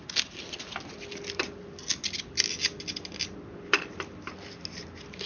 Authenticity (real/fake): real